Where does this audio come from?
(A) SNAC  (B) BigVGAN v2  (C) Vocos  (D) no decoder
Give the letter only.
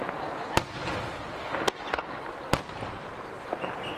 D